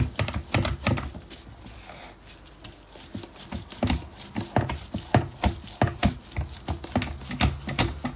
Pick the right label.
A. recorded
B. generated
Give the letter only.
A